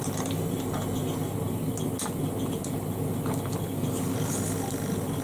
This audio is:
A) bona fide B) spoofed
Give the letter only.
A